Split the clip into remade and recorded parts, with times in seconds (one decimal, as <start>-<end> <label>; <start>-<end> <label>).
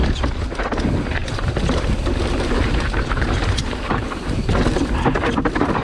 0.0-1.2 recorded; 1.2-4.6 remade; 4.6-5.8 recorded